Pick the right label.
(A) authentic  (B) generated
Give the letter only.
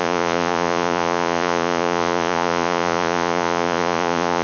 B